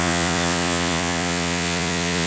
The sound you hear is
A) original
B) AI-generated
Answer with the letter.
B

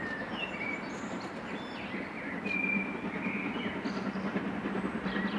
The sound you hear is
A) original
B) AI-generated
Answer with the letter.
A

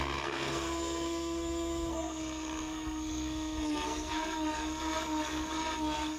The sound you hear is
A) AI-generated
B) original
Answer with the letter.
A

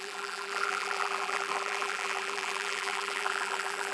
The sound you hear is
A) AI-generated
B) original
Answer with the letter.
A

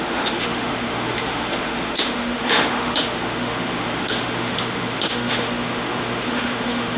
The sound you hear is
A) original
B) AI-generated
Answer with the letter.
B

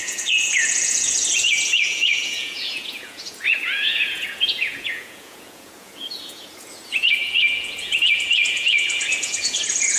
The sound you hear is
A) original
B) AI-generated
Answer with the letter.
B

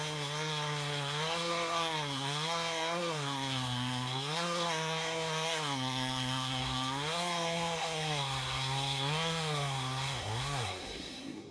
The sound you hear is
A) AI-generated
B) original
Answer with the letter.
A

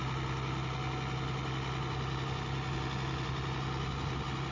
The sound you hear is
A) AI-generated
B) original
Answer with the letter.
B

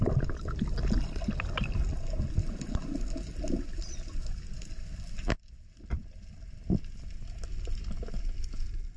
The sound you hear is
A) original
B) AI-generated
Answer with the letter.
A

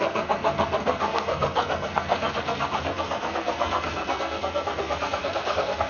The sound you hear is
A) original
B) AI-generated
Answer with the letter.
B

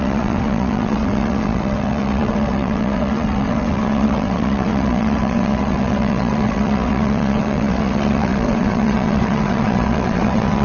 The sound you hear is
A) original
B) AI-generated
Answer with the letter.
B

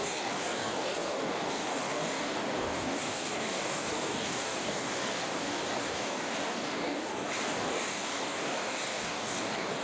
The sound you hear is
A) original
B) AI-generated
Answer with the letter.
B